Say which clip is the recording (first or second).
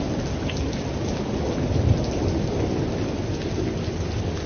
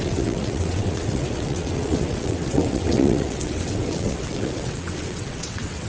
first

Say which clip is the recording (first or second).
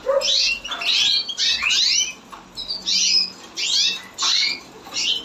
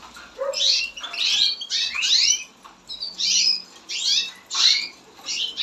first